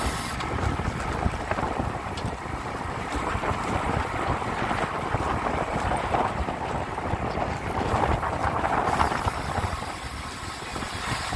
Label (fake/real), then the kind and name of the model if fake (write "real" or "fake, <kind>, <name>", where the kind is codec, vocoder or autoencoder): real